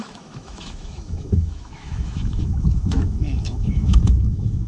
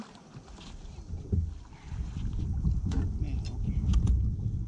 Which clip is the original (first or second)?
second